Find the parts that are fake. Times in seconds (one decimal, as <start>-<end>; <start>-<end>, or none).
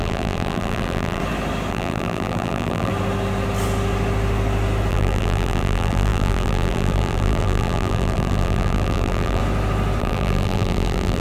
0.0-1.2; 1.7-2.9; 4.9-9.4; 10.0-11.2